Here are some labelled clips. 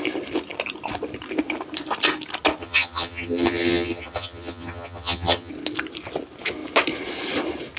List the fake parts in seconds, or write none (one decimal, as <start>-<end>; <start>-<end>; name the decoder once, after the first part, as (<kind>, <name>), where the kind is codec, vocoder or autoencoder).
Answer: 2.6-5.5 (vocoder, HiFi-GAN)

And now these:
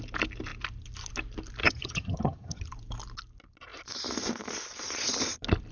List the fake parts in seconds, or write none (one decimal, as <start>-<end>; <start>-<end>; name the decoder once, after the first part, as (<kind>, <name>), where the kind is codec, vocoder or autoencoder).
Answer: 1.6-2.6 (vocoder, HiFi-GAN)

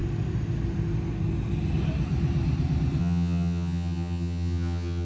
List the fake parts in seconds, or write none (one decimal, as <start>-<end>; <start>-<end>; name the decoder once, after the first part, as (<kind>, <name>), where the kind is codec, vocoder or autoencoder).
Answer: 3.0-5.0 (vocoder, HiFi-GAN)